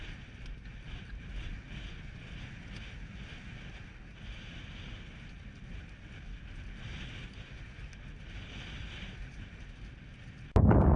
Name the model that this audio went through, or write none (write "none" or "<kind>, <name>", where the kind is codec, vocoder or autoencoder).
none